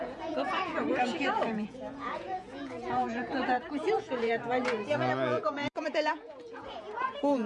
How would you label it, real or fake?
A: fake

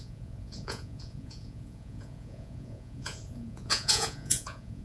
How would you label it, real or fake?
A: fake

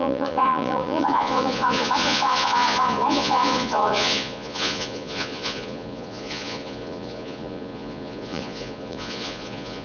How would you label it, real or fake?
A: fake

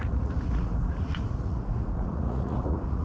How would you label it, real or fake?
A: fake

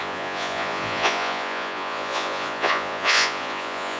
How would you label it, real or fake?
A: fake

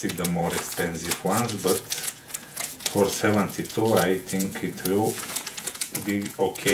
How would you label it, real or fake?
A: fake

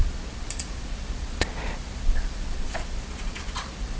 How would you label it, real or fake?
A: fake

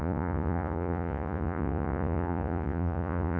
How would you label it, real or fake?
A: fake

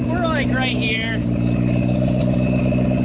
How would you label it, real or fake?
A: real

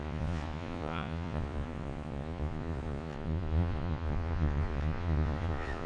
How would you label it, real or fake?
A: fake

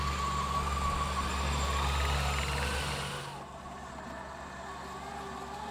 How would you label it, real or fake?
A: real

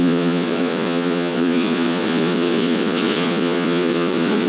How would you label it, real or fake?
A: fake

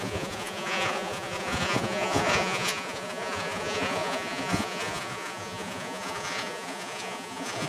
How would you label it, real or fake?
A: fake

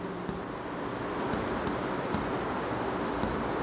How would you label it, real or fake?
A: real